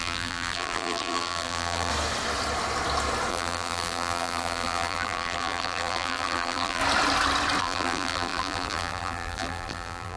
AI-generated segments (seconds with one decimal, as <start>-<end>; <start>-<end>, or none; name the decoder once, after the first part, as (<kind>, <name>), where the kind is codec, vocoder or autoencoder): 0.0-1.9 (vocoder, BigVGAN v2); 3.3-6.8; 7.6-10.2